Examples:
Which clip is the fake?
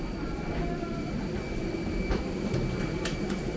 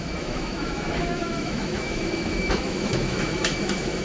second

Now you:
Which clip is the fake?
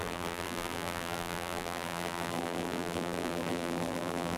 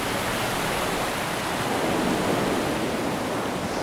first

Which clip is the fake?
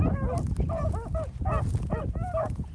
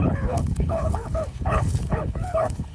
second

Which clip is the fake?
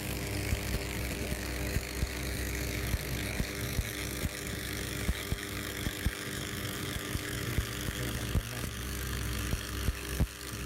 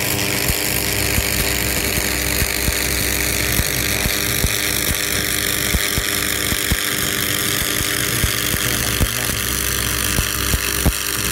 first